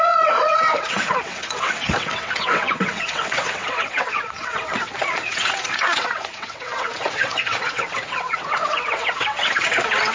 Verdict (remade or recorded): remade